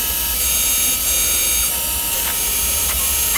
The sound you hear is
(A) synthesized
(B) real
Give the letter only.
B